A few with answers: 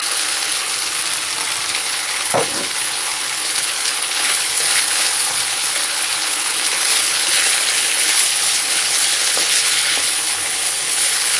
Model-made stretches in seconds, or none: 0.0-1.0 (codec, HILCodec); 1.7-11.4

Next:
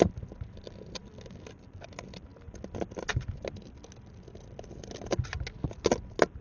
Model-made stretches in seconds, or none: none

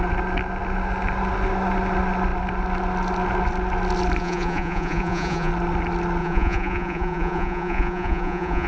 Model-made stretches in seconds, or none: 4.2-5.5 (vocoder, Vocos); 6.2-8.7

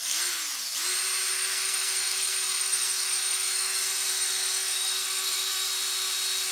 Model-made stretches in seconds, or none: 0.0-0.4 (codec, SNAC); 1.3-5.7

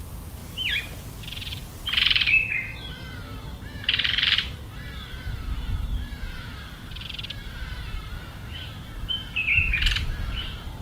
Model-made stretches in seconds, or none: 0.0-0.4 (vocoder, BigVGAN v2); 1.2-10.8

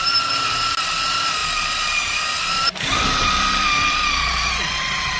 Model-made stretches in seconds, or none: 1.4-4.5 (vocoder, BigVGAN v2)

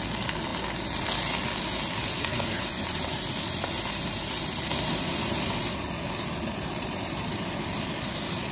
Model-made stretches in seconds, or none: 2.3-2.8 (vocoder, Vocos)

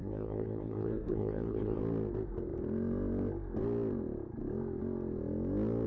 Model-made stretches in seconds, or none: 0.0-1.8 (codec, SNAC)